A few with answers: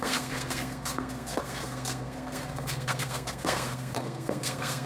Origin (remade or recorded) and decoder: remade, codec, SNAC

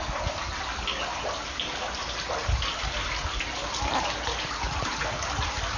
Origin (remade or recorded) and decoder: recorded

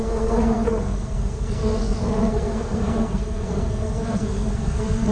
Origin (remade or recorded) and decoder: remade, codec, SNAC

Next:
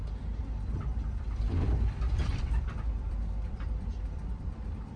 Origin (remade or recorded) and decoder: remade, vocoder, BigVGAN v2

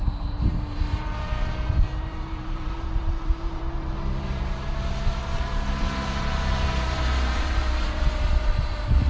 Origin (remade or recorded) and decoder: remade, vocoder, BigVGAN v2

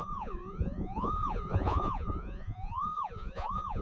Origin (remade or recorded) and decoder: remade, vocoder, Vocos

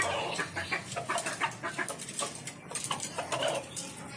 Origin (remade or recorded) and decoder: recorded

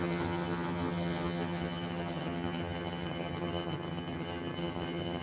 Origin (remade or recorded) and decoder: remade, vocoder, HiFi-GAN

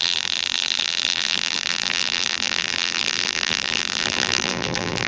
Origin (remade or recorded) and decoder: remade, vocoder, BigVGAN v2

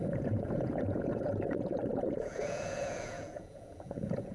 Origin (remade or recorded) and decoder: remade, vocoder, Vocos